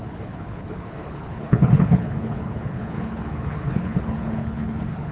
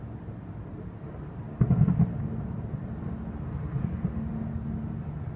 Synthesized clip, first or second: first